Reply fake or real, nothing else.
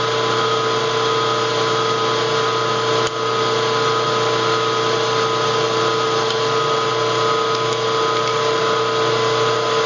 real